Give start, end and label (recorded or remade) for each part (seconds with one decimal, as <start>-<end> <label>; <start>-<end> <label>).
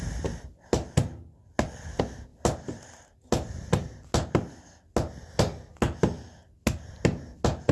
0.0-7.7 recorded